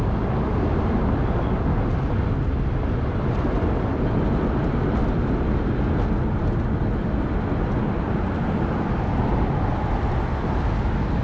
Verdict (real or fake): real